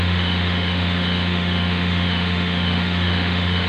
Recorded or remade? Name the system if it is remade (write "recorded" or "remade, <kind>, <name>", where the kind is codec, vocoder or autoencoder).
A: remade, autoencoder, DAC-VAE